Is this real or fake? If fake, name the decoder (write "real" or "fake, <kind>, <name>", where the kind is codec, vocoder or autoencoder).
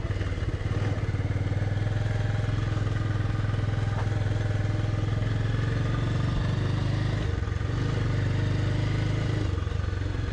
real